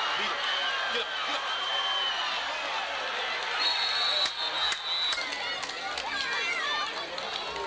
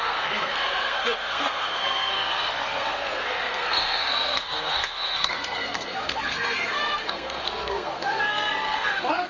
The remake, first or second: second